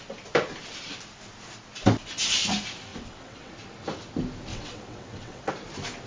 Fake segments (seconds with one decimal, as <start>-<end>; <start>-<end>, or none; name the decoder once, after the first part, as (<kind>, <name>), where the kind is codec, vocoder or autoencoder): 2.9-3.5 (vocoder, WaveNeXt); 4.5-5.5